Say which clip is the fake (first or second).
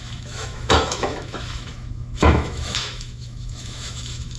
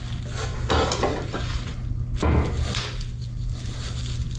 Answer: first